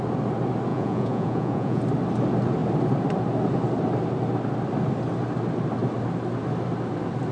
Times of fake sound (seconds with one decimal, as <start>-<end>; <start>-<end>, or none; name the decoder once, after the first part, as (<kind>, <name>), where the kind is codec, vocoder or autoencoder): 0.7-1.8 (vocoder, Vocos)

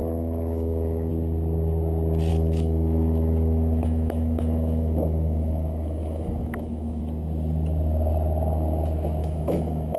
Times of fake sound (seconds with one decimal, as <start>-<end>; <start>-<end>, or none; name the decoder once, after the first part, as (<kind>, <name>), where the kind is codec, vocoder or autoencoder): 0.0-1.1 (autoencoder, DAC-VAE); 2.3-7.0; 9.2-10.0

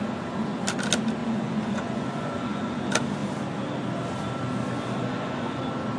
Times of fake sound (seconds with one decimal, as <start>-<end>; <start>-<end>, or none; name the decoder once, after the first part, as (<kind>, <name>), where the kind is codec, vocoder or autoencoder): 1.2-2.8 (vocoder, Vocos); 5.0-5.6

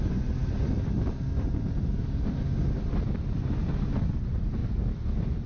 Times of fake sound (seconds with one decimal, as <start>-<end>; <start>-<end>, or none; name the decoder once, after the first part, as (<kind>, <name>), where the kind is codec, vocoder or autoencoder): 0.4-3.7 (vocoder, BigVGAN v2); 4.6-5.5

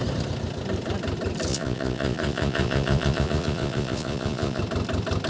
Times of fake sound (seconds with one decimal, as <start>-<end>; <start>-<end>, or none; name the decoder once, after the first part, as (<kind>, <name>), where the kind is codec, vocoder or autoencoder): 1.5-4.6 (vocoder, Vocos)

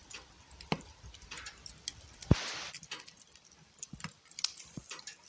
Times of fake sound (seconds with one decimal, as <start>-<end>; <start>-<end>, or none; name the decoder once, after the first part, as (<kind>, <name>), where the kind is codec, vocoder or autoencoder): 0.0-5.3 (vocoder, BigVGAN v2)

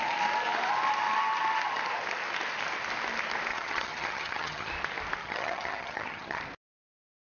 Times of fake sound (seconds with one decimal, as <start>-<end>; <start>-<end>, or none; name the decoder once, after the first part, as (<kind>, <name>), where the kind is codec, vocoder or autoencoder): 3.5-4.7 (vocoder, HiFi-GAN); 5.2-6.4